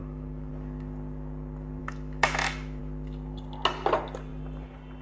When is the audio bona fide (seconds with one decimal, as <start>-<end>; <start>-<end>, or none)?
0.5-1.8; 2.8-5.0